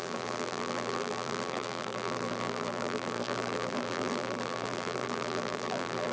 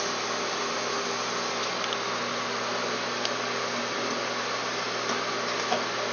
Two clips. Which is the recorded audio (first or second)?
second